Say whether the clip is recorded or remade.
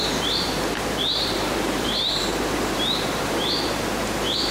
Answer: remade